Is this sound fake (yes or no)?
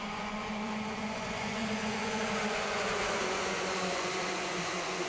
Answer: yes